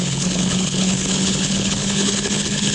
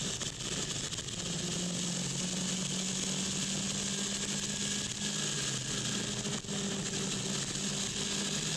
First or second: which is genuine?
second